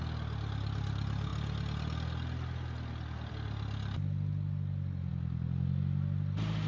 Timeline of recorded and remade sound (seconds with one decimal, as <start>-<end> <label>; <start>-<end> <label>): 0.0-6.7 recorded

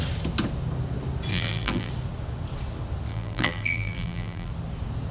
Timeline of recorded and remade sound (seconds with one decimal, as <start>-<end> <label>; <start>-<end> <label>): 0.0-1.3 recorded; 1.3-1.9 remade; 1.9-3.1 recorded; 3.1-4.5 remade; 4.5-5.1 recorded

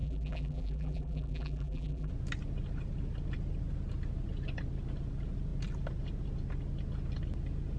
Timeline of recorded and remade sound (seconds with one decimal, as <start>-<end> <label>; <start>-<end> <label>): 0.0-2.1 remade; 2.1-7.8 recorded